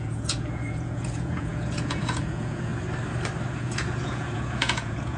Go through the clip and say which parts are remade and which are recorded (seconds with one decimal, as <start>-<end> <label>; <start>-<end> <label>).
0.0-2.7 remade; 2.7-3.5 recorded; 3.5-5.2 remade